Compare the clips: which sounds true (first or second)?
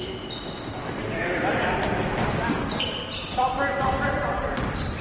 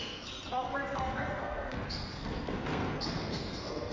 first